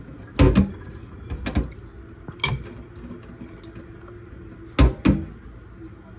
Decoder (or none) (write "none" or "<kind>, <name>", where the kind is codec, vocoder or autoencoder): none